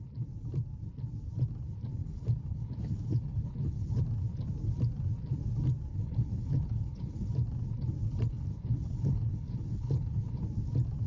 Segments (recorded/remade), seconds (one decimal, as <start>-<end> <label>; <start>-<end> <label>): 0.0-2.0 recorded; 2.0-4.0 remade; 4.0-5.9 recorded; 5.9-7.3 remade; 7.3-8.3 recorded; 8.3-10.4 remade; 10.4-11.1 recorded